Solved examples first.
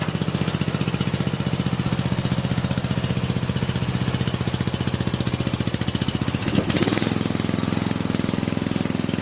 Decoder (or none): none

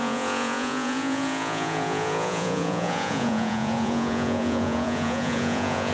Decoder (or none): vocoder, Vocos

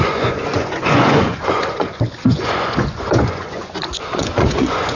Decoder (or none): vocoder, Vocos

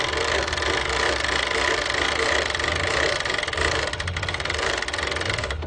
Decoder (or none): none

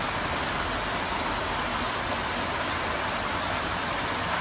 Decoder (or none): none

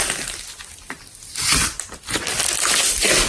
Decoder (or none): none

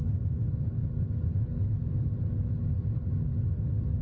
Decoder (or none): none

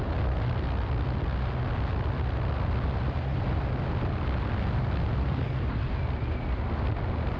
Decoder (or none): none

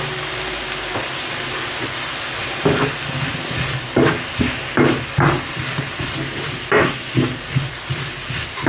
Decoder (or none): none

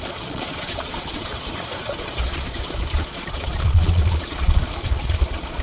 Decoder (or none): vocoder, Vocos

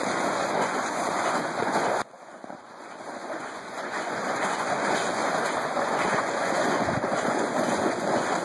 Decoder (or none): vocoder, Vocos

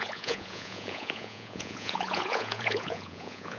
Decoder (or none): vocoder, Vocos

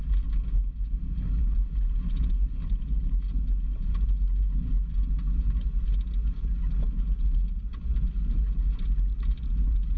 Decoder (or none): none